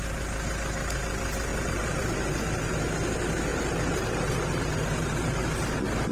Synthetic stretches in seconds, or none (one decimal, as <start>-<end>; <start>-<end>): 1.5-2.7; 3.5-5.4